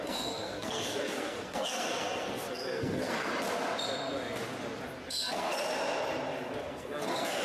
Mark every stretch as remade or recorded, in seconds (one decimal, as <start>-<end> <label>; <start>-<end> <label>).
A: 0.0-3.3 remade; 3.3-5.1 recorded; 5.1-5.5 remade; 5.5-6.6 recorded; 6.6-7.4 remade